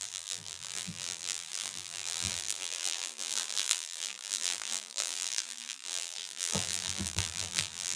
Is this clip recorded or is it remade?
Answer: remade